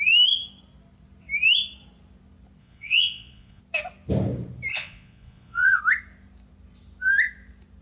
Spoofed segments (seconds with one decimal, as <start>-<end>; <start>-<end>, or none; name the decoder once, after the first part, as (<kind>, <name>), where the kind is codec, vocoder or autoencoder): 2.6-3.6 (vocoder, Vocos); 4.7-5.8